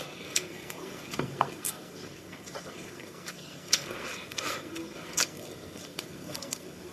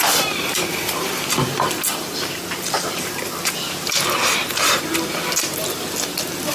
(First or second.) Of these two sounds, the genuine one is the second